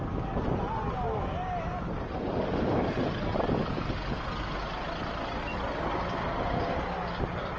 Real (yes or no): yes